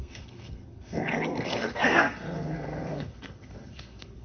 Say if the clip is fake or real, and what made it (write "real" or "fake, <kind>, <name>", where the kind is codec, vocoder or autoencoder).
fake, codec, SNAC